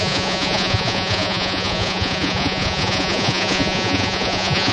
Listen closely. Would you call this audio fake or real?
fake